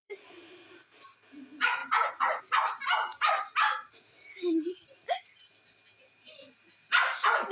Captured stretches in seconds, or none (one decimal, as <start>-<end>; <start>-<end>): 1.8-2.4